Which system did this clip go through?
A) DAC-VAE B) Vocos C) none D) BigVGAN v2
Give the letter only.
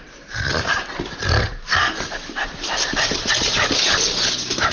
C